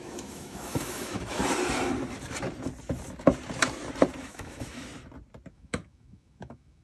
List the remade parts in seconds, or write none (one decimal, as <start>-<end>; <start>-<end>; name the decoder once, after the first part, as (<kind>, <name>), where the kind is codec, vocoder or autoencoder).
0.0-1.4 (autoencoder, DAC-VAE); 4.2-4.9; 5.5-6.8

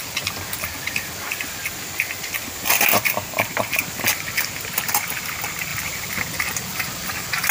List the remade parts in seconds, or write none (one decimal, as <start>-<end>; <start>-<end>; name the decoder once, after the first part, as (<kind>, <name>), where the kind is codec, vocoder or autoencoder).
2.9-3.8 (vocoder, BigVGAN v2)

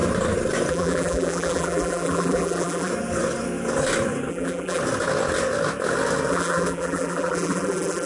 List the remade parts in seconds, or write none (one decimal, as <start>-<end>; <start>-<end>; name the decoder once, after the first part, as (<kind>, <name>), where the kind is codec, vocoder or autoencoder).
0.7-2.9 (vocoder, BigVGAN v2); 4.3-4.8; 6.3-8.1

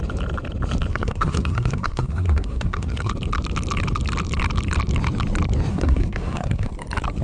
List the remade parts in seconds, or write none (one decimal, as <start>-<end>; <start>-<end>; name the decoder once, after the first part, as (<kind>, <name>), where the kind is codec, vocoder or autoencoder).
0.9-3.1 (codec, SNAC); 5.7-6.7